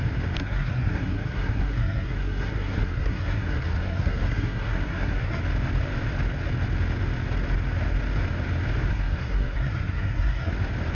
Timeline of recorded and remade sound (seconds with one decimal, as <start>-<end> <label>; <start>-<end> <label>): 0.0-0.4 recorded; 0.4-5.4 remade; 5.4-8.9 recorded; 8.9-10.5 remade; 10.5-10.9 recorded